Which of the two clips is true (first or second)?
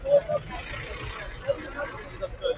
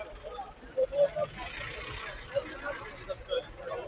first